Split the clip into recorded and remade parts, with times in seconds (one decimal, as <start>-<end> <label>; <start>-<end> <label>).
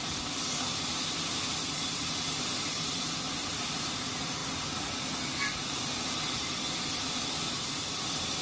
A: 0.0-8.4 recorded